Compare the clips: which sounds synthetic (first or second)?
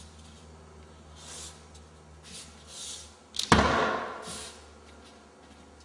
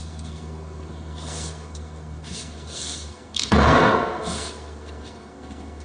second